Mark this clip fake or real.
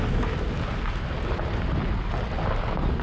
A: real